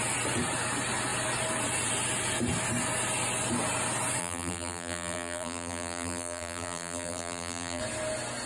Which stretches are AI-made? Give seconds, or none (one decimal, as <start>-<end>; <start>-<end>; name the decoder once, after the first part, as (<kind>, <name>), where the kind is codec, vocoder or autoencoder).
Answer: 4.2-7.8 (vocoder, BigVGAN v2)